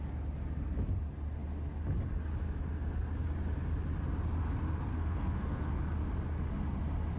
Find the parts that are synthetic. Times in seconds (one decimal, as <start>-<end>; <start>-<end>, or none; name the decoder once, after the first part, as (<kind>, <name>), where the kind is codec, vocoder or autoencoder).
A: 4.9-5.7 (codec, SNAC)